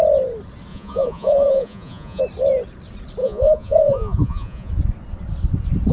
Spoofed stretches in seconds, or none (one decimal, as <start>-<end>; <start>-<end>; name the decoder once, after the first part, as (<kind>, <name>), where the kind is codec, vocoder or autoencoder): 0.7-2.2 (vocoder, Vocos); 3.2-4.7